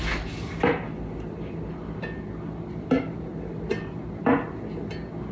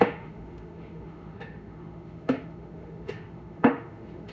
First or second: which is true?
first